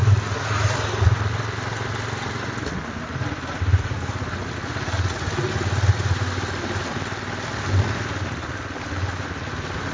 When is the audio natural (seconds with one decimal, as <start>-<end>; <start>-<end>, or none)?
0.0-9.9